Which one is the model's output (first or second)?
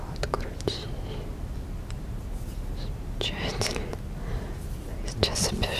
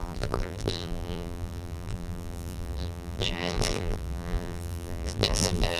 second